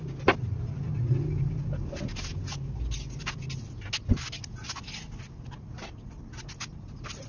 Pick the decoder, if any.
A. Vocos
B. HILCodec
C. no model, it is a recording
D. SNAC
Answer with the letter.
C